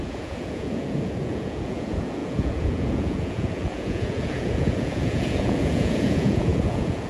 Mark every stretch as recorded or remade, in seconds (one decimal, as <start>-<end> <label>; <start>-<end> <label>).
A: 0.0-7.1 remade

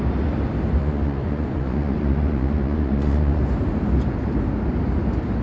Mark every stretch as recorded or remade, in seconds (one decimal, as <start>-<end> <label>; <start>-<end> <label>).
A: 0.0-0.8 recorded; 0.8-3.4 remade; 3.4-5.4 recorded

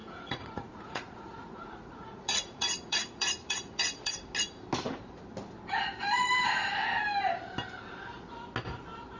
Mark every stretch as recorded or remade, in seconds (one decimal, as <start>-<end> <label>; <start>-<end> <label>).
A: 0.0-4.1 remade; 4.1-9.2 recorded

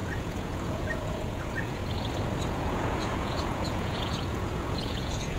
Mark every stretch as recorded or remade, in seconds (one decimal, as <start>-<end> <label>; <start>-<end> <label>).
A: 0.0-1.8 remade; 1.8-2.5 recorded; 2.5-5.4 remade

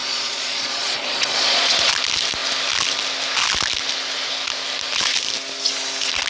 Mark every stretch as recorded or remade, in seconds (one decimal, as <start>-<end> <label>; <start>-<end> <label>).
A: 0.0-1.9 remade; 1.9-6.3 recorded